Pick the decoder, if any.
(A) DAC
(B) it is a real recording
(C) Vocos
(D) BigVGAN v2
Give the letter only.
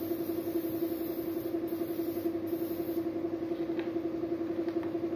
B